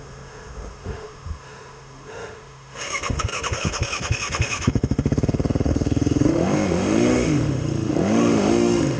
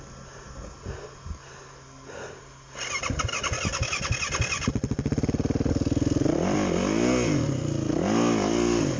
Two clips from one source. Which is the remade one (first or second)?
first